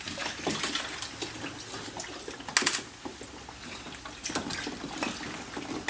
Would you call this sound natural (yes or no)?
yes